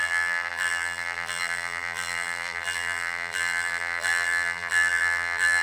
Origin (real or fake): fake